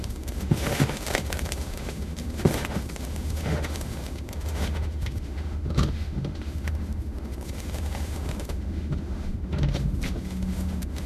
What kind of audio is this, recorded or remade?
remade